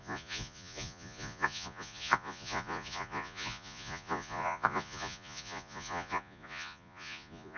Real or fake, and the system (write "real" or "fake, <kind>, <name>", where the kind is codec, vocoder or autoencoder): fake, vocoder, Vocos